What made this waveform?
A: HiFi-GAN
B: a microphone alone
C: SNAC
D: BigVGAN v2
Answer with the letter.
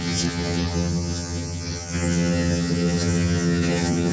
A